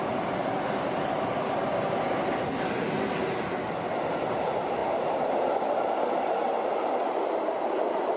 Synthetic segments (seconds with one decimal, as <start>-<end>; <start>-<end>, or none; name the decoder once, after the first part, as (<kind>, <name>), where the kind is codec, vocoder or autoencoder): none